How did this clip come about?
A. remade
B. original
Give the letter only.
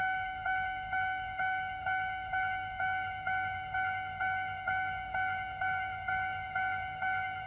A